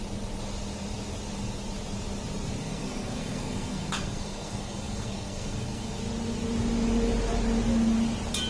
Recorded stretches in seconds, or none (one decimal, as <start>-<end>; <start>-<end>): 0.0-2.6; 6.0-8.5